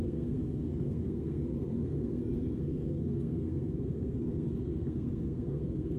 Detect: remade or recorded remade